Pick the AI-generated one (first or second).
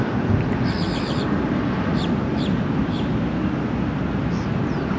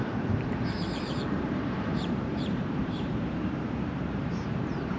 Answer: second